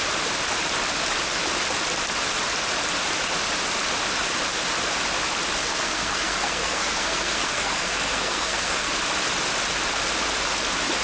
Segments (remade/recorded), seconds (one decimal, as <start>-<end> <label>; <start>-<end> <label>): 0.0-5.6 recorded; 5.6-8.9 remade; 8.9-11.0 recorded